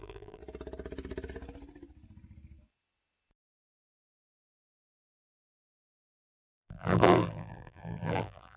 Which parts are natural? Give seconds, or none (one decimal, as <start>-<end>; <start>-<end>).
0.4-3.4